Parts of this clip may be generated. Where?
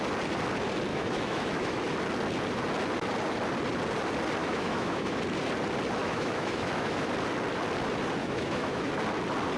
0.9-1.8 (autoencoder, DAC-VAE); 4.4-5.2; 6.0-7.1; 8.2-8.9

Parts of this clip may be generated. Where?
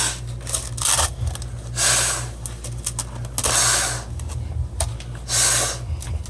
none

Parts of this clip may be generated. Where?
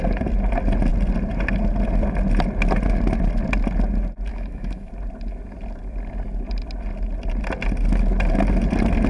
4.3-4.9 (autoencoder, DAC-VAE)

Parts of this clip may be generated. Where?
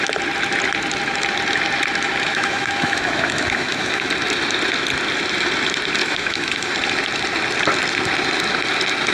2.3-4.1 (autoencoder, DAC-VAE); 6.0-6.7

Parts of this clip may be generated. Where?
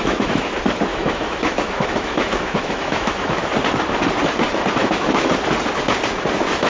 0.0-0.5 (autoencoder, DAC-VAE); 0.9-3.4; 4.8-5.3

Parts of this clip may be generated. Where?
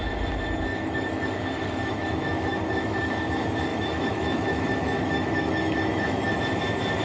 0.7-3.1 (autoencoder, DAC-VAE); 3.7-6.4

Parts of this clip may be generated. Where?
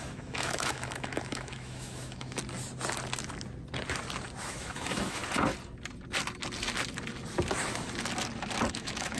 0.0-2.4 (autoencoder, DAC-VAE); 4.4-5.2; 8.7-9.2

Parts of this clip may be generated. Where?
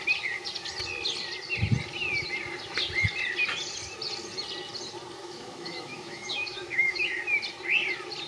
5.2-7.2 (autoencoder, DAC-VAE)